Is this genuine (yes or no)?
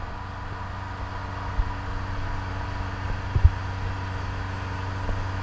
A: yes